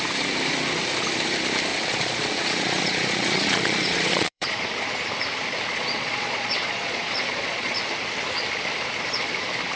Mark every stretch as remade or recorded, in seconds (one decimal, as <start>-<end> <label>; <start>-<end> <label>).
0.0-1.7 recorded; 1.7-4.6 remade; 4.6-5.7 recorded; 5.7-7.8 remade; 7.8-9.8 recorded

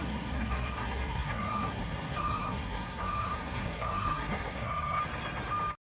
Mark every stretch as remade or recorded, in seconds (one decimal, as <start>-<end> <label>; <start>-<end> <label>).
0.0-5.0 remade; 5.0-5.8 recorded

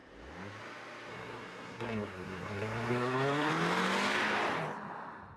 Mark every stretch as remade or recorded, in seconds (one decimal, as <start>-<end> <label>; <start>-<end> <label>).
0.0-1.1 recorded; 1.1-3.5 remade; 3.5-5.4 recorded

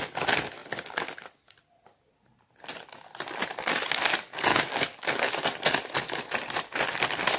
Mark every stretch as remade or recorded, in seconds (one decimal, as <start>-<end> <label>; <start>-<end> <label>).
0.0-4.5 recorded; 4.5-5.3 remade; 5.3-7.4 recorded